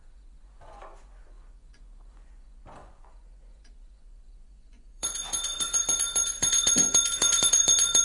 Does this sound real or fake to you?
fake